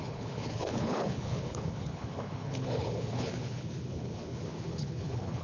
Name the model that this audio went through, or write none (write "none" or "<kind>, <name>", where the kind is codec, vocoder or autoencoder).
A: codec, HILCodec